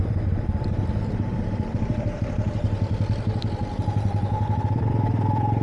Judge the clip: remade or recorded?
remade